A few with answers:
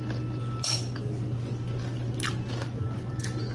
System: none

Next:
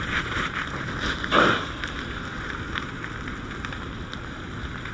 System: none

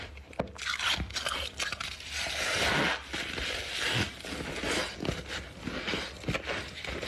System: none